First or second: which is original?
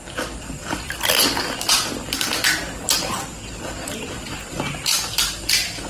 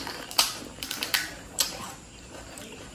first